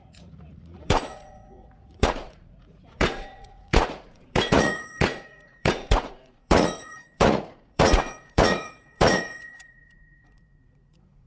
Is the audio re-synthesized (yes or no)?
yes